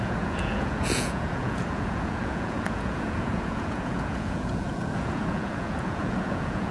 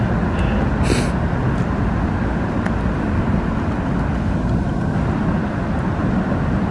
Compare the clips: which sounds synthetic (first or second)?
first